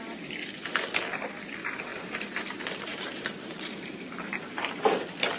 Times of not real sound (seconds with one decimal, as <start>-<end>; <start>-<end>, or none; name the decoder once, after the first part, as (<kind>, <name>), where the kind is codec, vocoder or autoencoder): 1.9-5.4 (vocoder, BigVGAN v2)

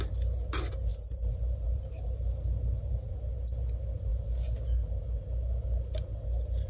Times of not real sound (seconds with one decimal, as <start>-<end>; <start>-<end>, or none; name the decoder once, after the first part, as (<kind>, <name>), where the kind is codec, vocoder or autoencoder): 0.9-3.1 (vocoder, BigVGAN v2)

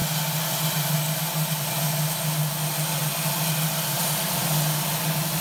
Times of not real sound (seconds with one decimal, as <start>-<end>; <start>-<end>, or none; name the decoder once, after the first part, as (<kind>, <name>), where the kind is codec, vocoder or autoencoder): none